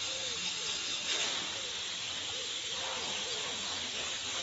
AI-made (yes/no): no